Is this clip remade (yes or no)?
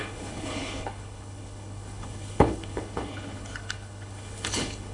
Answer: yes